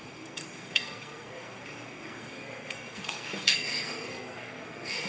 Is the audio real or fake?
fake